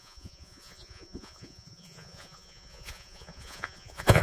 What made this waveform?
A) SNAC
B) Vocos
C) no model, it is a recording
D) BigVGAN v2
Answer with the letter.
B